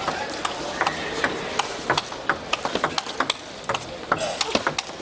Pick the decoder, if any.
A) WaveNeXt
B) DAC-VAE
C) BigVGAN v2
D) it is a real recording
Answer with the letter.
D